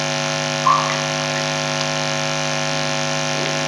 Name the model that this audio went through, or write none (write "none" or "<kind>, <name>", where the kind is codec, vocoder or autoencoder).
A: none